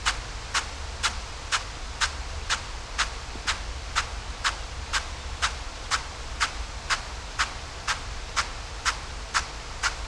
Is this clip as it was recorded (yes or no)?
yes